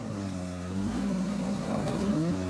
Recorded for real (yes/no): no